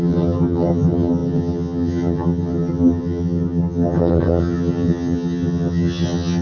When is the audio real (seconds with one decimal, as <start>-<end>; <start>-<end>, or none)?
none